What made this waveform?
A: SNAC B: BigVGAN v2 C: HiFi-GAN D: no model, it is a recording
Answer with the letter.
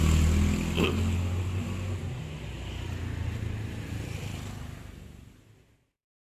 D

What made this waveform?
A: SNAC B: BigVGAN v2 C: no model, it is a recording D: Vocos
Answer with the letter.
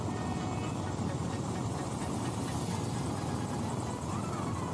C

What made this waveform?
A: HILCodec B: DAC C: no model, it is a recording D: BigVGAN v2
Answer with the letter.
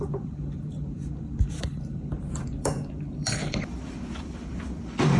D